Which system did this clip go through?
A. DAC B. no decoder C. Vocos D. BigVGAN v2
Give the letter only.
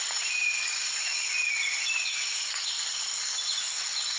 B